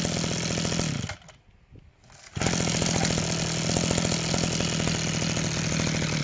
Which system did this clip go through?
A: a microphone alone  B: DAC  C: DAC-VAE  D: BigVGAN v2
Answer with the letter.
A